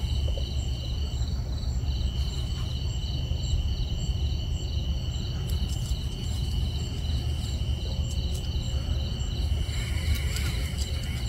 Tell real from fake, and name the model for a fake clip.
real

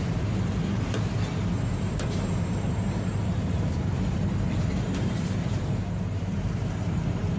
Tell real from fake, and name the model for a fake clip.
fake, vocoder, BigVGAN v2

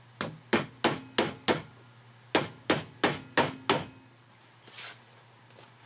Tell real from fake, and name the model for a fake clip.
real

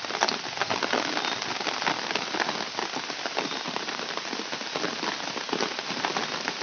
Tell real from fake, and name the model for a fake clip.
real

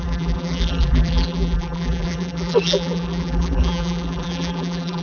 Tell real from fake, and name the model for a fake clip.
fake, vocoder, BigVGAN v2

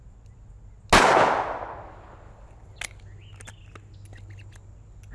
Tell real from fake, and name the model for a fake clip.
real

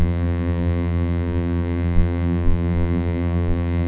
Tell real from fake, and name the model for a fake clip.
fake, vocoder, BigVGAN v2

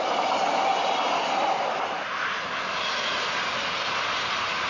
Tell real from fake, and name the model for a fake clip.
real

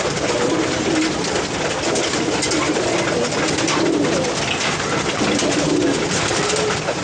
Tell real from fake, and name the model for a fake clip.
real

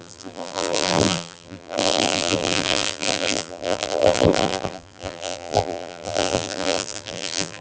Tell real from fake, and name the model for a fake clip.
fake, vocoder, BigVGAN v2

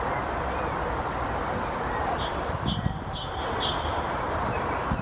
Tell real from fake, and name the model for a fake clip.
fake, vocoder, BigVGAN v2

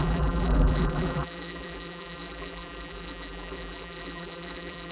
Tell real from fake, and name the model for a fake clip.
fake, vocoder, BigVGAN v2